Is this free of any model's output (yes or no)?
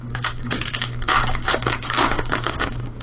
no